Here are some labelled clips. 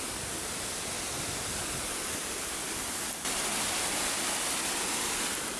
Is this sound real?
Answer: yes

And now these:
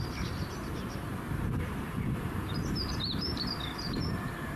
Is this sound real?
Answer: no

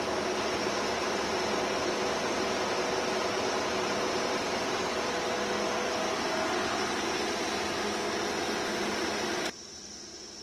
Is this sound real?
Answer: yes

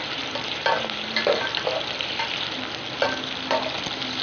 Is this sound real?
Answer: no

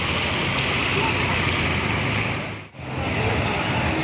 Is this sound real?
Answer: yes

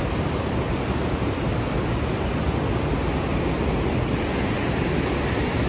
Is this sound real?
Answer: yes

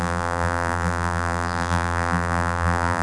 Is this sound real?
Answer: no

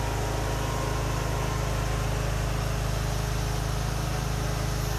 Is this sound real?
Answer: yes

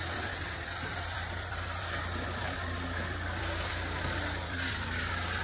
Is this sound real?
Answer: no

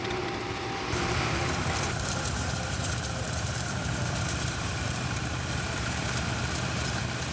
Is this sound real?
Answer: no